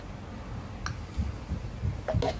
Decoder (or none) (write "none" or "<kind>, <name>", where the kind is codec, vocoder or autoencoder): none